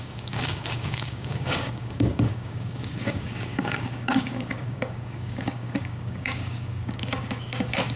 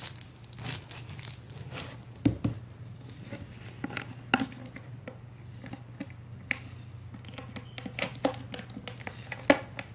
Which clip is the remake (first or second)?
first